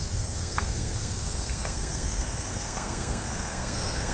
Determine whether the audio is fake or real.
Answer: fake